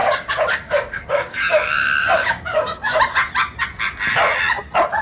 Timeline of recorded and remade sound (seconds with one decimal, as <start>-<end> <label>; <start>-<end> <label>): 0.0-3.0 remade; 3.0-5.0 recorded